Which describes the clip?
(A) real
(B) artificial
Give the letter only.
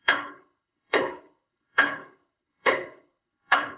B